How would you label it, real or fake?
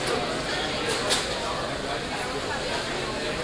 real